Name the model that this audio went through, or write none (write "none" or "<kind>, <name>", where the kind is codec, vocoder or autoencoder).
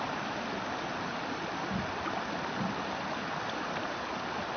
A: none